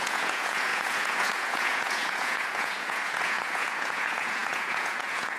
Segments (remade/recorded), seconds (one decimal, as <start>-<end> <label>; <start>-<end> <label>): 0.0-5.4 remade